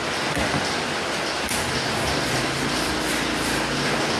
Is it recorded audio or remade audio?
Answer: recorded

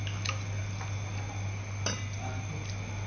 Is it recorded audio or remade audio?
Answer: recorded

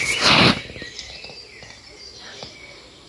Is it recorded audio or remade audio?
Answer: recorded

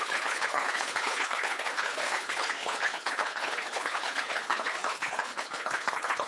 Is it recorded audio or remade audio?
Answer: remade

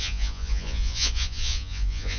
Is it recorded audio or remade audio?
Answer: remade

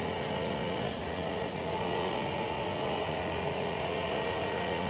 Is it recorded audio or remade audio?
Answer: remade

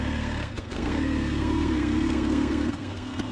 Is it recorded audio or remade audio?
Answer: remade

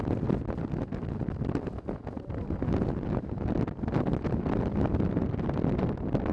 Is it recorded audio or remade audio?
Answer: recorded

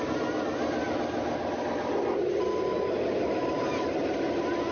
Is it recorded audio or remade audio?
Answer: recorded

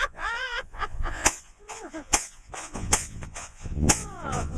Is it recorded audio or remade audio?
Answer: remade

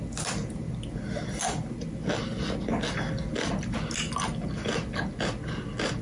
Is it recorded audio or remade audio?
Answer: recorded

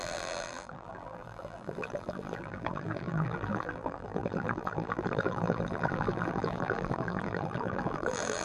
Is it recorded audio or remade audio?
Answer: remade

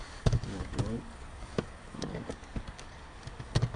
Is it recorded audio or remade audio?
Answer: remade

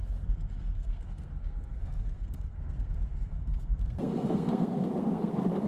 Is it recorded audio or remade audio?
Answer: remade